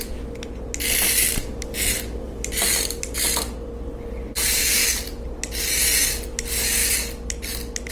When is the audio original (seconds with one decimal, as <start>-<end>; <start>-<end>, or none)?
0.0-7.9